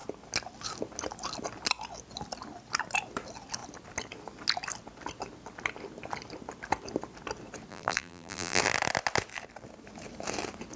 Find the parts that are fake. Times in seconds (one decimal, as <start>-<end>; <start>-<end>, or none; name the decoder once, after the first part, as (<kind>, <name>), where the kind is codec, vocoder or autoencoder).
7.7-8.6 (vocoder, BigVGAN v2)